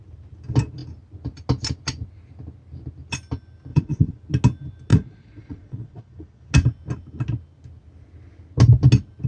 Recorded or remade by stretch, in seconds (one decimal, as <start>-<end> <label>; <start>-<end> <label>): 0.0-3.7 recorded; 3.7-4.2 remade; 4.2-4.9 recorded; 4.9-6.5 remade; 6.5-9.3 recorded